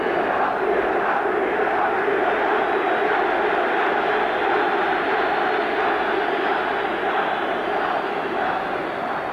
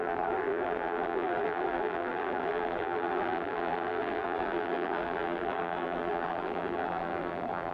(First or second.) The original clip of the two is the first